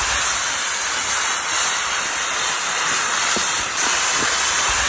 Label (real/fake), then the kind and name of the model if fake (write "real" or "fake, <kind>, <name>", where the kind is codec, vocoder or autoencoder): real